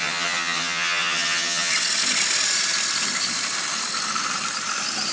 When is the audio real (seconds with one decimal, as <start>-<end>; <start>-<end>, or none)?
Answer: 1.7-5.1